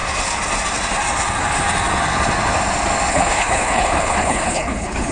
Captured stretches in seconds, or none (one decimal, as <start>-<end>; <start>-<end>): 0.0-3.1